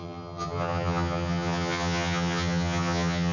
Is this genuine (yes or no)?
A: no